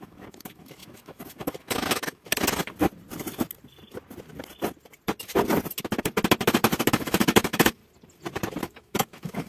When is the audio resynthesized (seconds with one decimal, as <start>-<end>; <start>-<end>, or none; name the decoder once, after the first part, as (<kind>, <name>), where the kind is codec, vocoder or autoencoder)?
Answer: 0.0-2.3 (autoencoder, DAC-VAE); 6.9-7.8; 8.6-9.5